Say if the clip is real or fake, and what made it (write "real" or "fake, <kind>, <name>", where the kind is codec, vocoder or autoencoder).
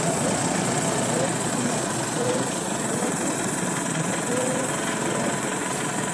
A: fake, vocoder, Vocos